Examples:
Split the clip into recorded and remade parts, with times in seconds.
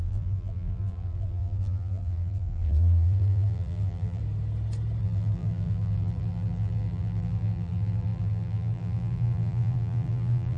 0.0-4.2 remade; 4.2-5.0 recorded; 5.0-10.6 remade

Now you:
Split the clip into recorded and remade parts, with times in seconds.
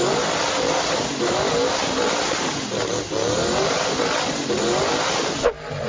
0.0-5.9 recorded